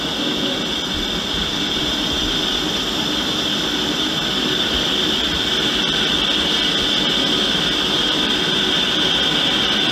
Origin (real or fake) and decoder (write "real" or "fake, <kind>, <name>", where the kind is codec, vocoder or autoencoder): real